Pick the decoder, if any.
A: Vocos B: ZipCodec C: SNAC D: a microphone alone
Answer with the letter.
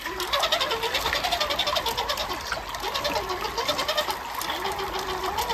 D